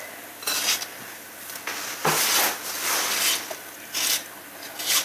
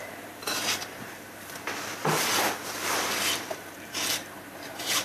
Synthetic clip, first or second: second